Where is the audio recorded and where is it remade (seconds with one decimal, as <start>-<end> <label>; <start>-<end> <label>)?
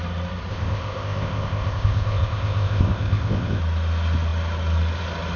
0.0-0.5 recorded; 0.5-3.6 remade; 3.6-5.4 recorded